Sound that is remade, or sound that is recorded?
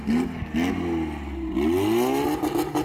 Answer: recorded